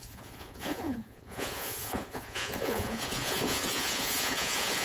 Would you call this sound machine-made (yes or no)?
yes